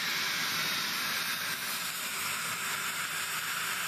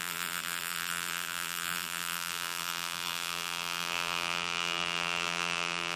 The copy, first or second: second